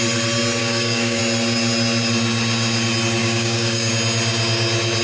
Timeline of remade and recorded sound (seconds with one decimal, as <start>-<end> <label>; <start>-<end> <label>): 0.0-0.6 recorded; 0.6-1.2 remade; 1.2-3.2 recorded; 3.2-3.9 remade; 3.9-5.0 recorded